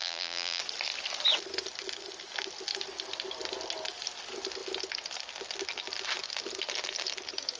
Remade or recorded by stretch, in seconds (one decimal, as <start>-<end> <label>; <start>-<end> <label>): 0.0-0.6 remade; 0.6-7.6 recorded